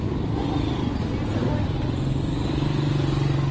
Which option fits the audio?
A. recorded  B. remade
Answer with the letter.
A